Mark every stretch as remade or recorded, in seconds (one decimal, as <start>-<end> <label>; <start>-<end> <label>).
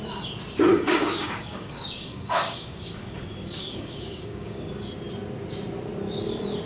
0.0-0.7 recorded; 0.7-4.7 remade; 4.7-6.7 recorded